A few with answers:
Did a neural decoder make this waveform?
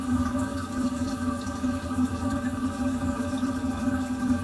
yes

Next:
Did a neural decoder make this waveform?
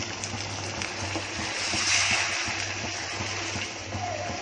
no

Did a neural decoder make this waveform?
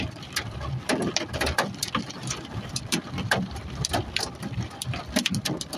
yes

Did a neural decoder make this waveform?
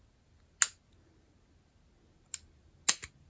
no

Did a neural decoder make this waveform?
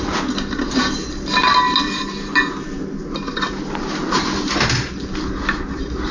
no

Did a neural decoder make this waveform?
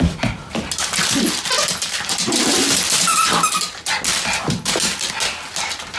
no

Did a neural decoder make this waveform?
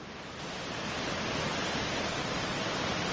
no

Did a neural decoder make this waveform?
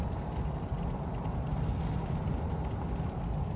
no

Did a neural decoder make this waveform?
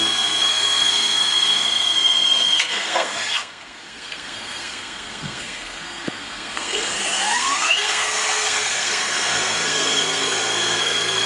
yes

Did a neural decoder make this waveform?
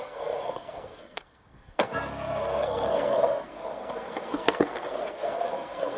yes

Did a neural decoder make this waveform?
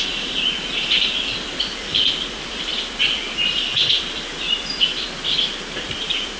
no